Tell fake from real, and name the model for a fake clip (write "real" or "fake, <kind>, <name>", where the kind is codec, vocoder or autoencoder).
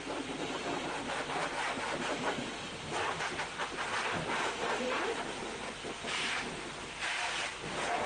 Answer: fake, vocoder, BigVGAN v2